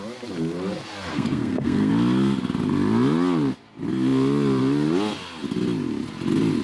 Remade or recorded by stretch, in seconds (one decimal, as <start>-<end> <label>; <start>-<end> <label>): 0.0-1.1 recorded; 1.1-1.9 remade; 1.9-6.6 recorded